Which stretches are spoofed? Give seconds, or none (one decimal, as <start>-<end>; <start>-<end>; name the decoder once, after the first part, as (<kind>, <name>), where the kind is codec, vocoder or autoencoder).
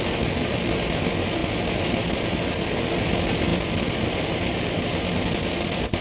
none